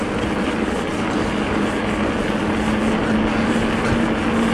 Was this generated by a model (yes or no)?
no